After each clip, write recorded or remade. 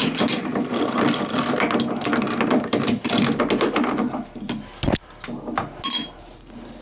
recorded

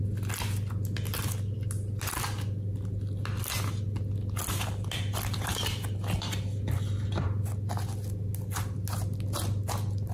recorded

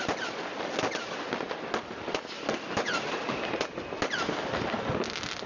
recorded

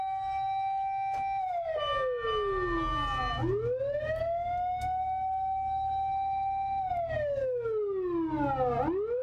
recorded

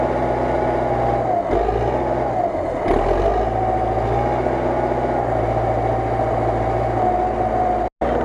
recorded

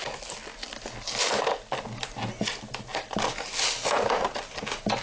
recorded